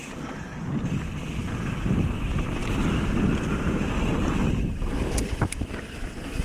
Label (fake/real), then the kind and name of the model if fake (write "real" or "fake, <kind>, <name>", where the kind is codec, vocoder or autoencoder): real